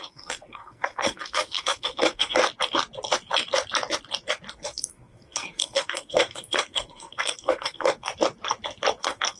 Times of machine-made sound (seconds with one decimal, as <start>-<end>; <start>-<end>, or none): 0.0-2.4; 4.5-8.1; 9.0-9.4